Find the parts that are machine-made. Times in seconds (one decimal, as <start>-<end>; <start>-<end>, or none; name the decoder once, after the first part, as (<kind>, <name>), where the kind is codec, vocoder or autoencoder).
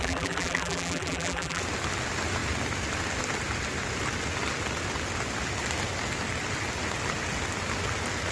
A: 0.0-1.6 (vocoder, BigVGAN v2)